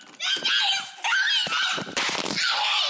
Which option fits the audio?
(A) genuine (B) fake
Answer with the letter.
A